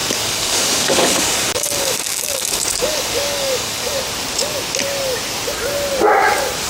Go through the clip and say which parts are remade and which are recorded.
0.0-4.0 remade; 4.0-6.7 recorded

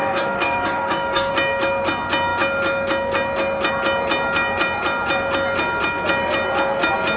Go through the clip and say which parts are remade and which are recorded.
0.0-1.3 remade; 1.3-7.2 recorded

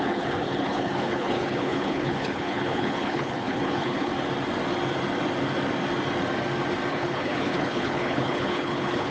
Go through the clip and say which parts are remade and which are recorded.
0.0-4.1 remade; 4.1-6.9 recorded; 6.9-9.1 remade

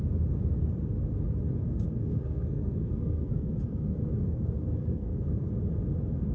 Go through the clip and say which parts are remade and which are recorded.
0.0-1.7 recorded; 1.7-5.5 remade; 5.5-6.3 recorded

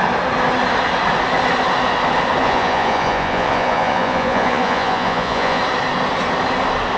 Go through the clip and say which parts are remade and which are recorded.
0.0-2.4 recorded; 2.4-5.6 remade; 5.6-7.0 recorded

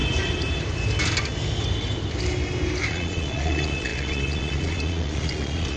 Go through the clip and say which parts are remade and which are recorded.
0.0-2.9 recorded; 2.9-5.8 remade